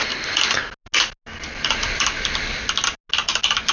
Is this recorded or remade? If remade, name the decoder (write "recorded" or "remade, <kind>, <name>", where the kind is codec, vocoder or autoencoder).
recorded